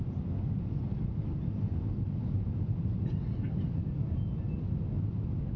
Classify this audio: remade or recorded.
recorded